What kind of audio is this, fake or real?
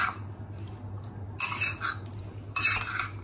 real